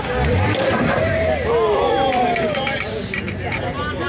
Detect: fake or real fake